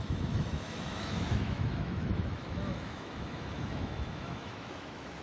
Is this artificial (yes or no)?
yes